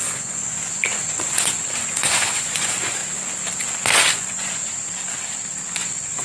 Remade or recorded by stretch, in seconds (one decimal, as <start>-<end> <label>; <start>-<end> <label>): 0.0-3.0 remade; 3.0-4.1 recorded; 4.1-4.6 remade; 4.6-5.7 recorded; 5.7-6.2 remade